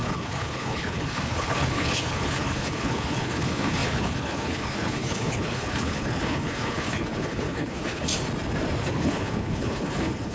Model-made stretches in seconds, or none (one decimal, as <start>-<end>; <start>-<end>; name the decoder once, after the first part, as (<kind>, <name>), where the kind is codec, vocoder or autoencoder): 0.0-8.1 (codec, HILCodec); 8.9-10.3